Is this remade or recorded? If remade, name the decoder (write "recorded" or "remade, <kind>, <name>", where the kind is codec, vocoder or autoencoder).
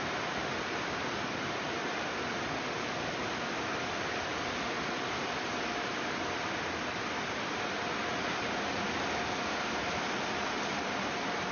recorded